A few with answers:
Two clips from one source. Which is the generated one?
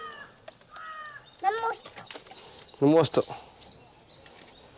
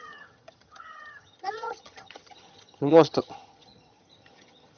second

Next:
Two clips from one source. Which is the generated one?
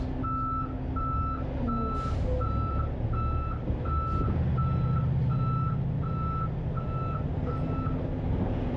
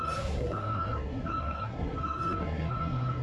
second